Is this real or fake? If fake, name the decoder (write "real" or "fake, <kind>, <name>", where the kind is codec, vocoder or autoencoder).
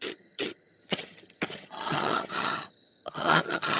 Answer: fake, vocoder, HiFi-GAN